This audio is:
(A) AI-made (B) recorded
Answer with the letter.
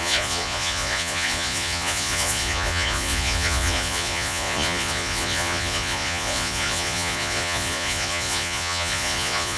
A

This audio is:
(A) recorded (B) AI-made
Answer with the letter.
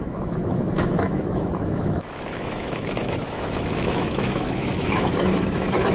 B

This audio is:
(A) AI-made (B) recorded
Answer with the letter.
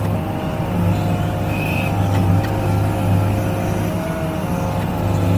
B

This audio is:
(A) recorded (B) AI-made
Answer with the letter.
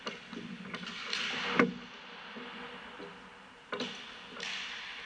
A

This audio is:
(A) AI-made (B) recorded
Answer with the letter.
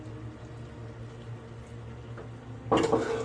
B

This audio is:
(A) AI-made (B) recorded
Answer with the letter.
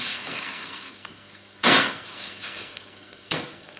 A